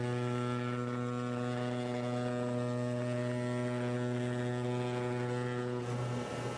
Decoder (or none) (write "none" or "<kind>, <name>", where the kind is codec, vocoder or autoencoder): none